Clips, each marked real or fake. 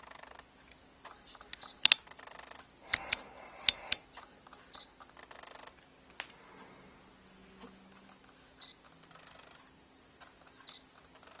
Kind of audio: real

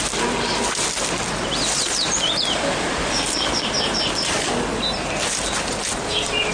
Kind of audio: real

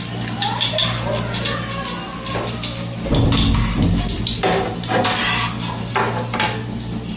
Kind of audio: real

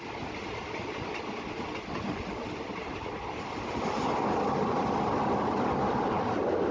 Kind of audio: real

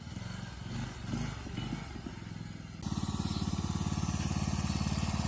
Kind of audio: real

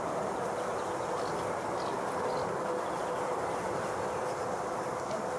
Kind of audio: real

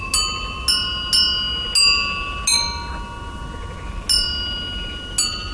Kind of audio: real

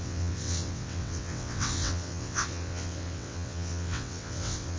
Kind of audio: fake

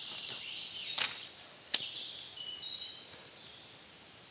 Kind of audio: real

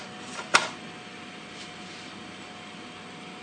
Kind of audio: real